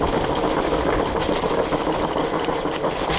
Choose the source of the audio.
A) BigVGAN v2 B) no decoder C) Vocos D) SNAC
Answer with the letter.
B